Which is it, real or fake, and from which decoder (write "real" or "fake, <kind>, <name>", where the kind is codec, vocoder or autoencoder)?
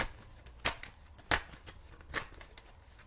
real